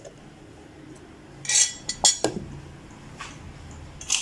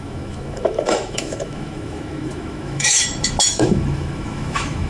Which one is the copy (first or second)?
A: second